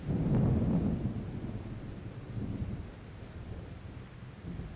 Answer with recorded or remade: recorded